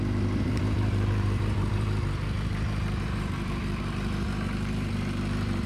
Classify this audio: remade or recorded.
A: remade